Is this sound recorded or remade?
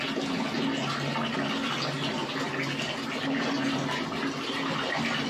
recorded